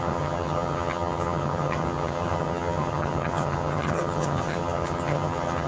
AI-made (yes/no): yes